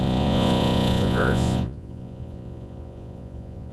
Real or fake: fake